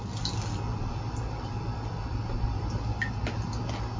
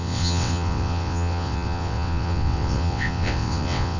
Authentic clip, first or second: first